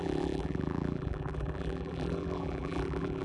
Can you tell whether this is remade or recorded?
remade